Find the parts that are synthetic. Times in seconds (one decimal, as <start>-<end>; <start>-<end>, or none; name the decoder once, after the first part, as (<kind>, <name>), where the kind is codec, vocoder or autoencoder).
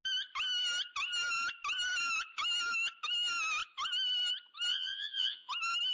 4.7-5.5 (vocoder, Vocos)